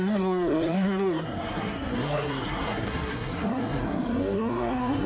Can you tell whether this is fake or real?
fake